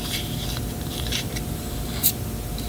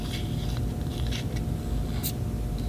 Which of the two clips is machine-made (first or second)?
first